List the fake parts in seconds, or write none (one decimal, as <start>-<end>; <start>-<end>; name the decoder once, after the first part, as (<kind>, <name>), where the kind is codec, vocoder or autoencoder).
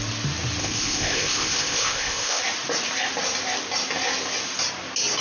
0.6-2.4 (codec, ZipCodec)